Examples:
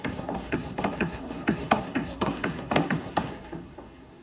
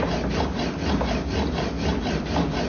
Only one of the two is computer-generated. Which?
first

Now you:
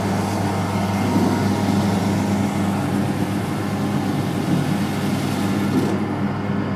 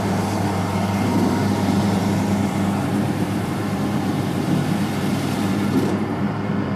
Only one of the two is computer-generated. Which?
second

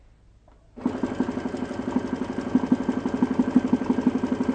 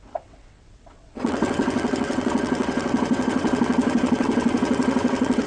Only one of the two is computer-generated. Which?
second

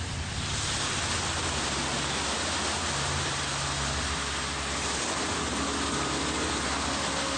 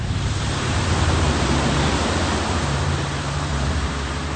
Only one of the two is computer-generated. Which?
second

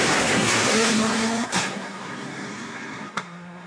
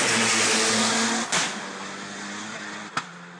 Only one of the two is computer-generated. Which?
first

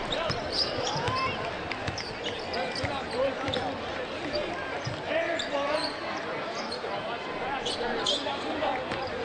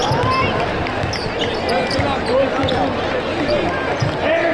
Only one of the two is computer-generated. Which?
first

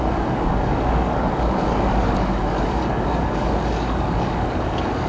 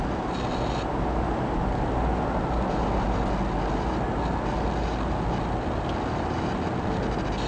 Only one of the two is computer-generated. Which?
first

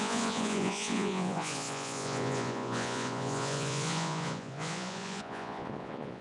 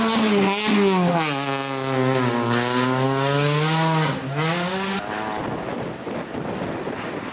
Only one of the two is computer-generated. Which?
first